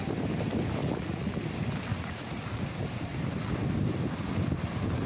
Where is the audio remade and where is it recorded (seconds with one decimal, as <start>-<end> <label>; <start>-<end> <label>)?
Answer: 0.0-0.8 recorded; 0.8-1.4 remade; 1.4-1.9 recorded; 1.9-2.6 remade; 2.6-5.1 recorded